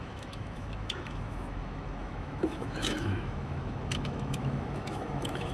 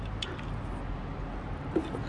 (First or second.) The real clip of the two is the second